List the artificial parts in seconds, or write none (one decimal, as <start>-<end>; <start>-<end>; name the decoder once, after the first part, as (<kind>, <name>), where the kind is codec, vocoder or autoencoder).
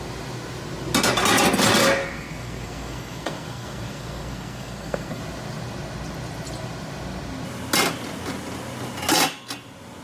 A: 2.0-5.2 (codec, SNAC)